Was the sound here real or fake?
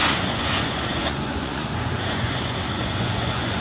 fake